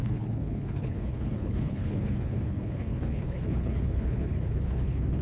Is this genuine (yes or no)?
no